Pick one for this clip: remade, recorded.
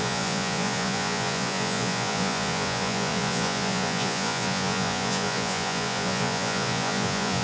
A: remade